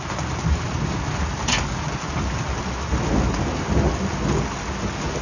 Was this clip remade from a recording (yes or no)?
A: no